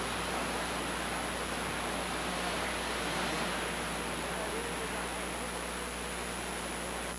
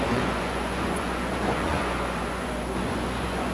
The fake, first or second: second